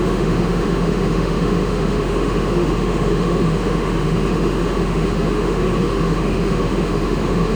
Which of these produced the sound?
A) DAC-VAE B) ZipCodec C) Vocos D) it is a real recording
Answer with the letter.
A